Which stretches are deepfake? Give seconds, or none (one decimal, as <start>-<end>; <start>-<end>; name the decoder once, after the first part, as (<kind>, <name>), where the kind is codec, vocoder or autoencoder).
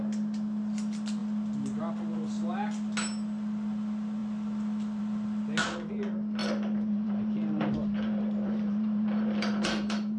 6.4-10.2 (vocoder, BigVGAN v2)